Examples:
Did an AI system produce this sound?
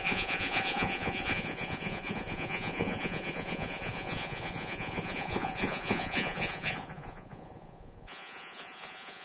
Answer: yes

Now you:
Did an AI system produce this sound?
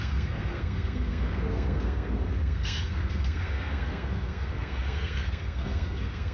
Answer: yes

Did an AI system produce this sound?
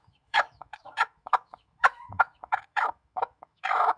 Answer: yes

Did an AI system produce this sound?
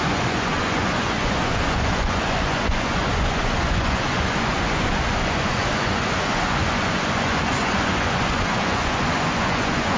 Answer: yes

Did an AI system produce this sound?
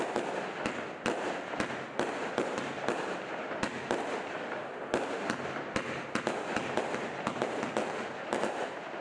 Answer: no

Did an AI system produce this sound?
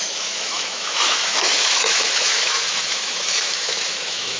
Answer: yes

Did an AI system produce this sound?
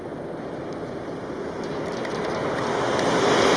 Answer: no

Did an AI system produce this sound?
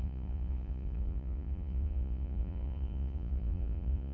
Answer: yes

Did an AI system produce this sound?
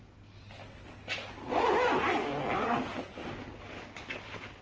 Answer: no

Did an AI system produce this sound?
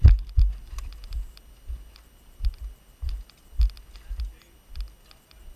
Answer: no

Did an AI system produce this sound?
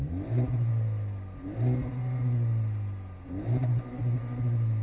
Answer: no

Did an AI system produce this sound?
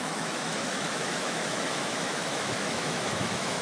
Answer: yes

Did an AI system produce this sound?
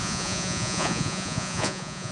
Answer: yes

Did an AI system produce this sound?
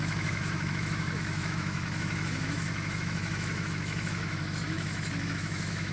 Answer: yes